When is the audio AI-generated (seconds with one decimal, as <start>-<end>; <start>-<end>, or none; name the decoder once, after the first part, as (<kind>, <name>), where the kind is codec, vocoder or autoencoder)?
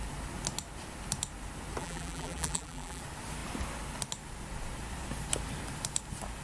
1.8-3.0 (vocoder, BigVGAN v2)